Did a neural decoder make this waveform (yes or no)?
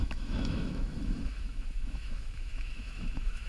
yes